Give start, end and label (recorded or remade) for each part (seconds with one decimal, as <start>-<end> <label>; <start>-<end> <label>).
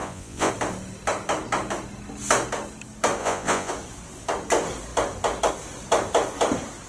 0.0-0.5 remade; 0.5-3.2 recorded; 3.2-3.7 remade; 3.7-6.9 recorded